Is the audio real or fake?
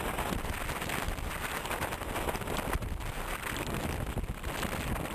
real